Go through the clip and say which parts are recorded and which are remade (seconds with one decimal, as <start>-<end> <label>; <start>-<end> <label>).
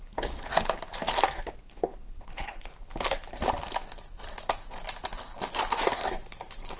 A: 0.0-0.5 remade; 0.5-1.6 recorded; 1.6-2.7 remade; 2.7-6.8 recorded